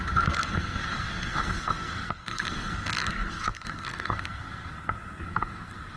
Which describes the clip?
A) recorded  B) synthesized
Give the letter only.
B